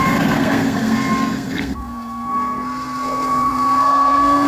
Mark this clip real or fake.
fake